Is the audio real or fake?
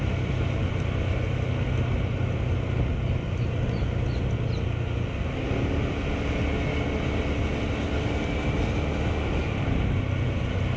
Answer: real